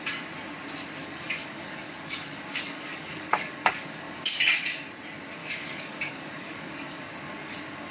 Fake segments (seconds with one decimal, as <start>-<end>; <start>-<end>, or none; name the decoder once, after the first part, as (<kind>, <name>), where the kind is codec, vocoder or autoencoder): 1.0-4.6 (codec, DAC); 5.4-7.1